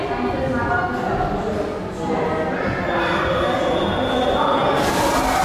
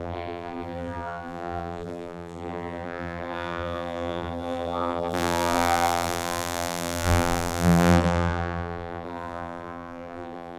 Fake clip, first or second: second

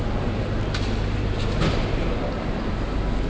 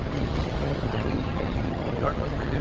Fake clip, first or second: second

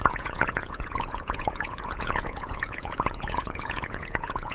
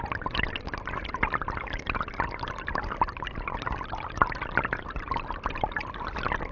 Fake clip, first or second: first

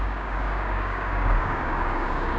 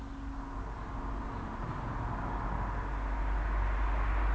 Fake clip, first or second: first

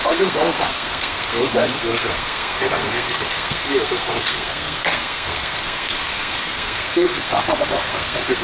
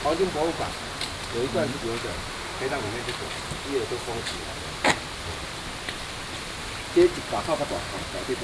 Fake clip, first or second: first